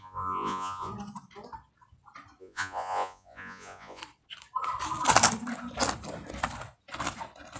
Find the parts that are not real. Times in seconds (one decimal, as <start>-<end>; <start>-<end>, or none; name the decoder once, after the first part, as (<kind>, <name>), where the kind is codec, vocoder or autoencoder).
0.0-0.9 (vocoder, Vocos); 2.4-4.0